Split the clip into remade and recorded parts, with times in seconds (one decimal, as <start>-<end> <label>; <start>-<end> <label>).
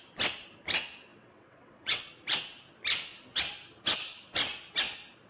0.0-1.1 recorded; 1.1-2.0 remade; 2.0-5.3 recorded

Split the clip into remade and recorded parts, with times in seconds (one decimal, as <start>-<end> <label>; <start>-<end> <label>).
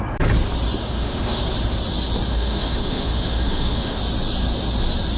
0.0-0.8 recorded; 0.8-1.4 remade; 1.4-2.3 recorded; 2.3-4.0 remade; 4.0-5.2 recorded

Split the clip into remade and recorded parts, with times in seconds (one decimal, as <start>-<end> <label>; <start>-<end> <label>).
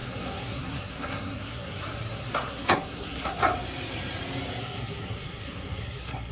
0.0-3.4 remade; 3.4-4.6 recorded; 4.6-6.3 remade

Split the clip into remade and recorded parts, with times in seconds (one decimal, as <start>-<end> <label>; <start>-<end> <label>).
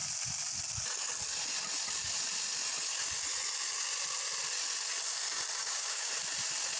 0.0-5.6 recorded; 5.6-6.1 remade; 6.1-6.8 recorded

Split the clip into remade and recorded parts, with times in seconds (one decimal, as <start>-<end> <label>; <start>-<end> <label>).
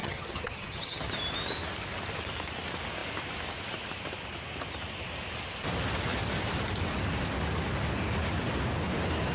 0.0-1.1 remade; 1.1-9.3 recorded